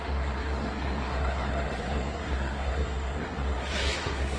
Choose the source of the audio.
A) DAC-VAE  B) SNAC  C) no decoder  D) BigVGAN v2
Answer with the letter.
B